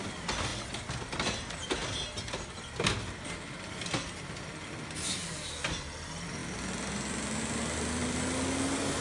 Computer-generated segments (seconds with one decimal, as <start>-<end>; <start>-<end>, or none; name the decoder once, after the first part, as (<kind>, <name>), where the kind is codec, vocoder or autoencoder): none